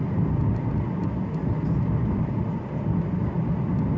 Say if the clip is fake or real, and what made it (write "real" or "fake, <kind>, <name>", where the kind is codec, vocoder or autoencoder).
real